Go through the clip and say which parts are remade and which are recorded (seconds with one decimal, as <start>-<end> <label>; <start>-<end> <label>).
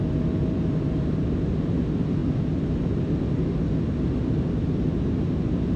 0.0-5.8 recorded